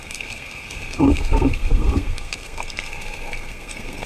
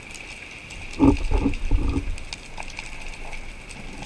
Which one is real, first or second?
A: second